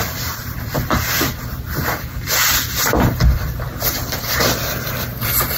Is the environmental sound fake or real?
fake